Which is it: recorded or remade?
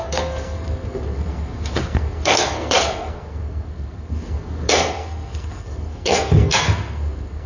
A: remade